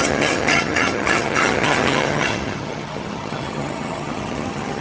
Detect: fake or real fake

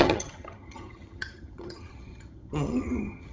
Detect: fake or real fake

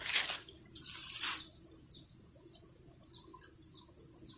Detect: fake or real real